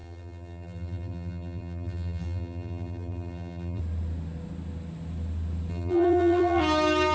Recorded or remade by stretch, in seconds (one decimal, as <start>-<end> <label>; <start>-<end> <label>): 0.0-3.8 remade; 3.8-5.7 recorded; 5.7-6.6 remade; 6.6-7.1 recorded